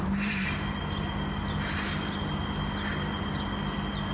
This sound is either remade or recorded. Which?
recorded